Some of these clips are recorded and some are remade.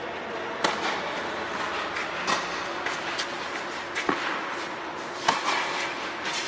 recorded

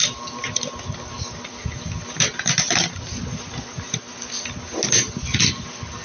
recorded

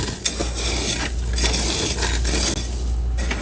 recorded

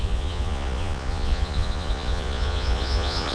remade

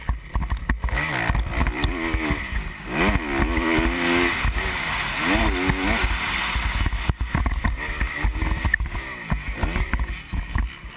recorded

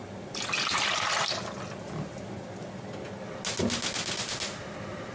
recorded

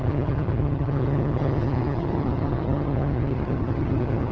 remade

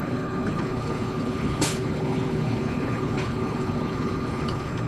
remade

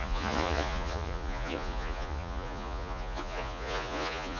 remade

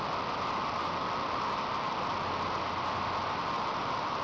recorded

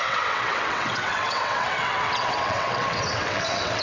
remade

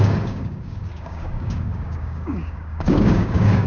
remade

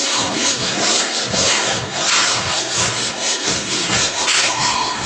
remade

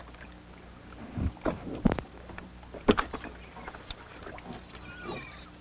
recorded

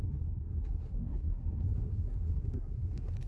remade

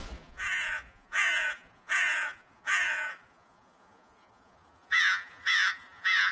remade